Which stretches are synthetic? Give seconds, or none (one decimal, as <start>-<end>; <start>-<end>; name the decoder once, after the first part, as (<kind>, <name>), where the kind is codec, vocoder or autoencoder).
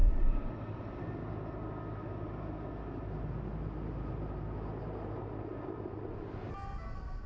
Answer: 0.0-0.5 (vocoder, BigVGAN v2); 5.5-6.5